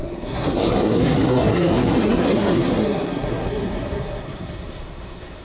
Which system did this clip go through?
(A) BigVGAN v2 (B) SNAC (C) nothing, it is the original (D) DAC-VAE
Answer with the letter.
B